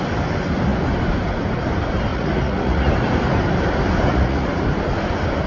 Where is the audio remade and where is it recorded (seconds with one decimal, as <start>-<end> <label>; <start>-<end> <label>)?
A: 0.0-2.1 recorded; 2.1-2.9 remade; 2.9-4.1 recorded; 4.1-4.6 remade; 4.6-5.5 recorded